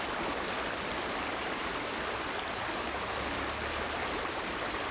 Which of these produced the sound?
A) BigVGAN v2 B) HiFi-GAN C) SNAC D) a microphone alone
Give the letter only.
D